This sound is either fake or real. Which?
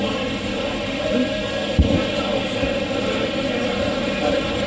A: real